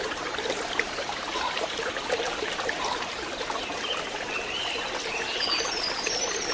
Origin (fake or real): real